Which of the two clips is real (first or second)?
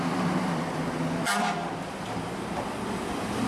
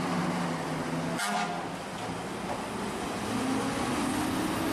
second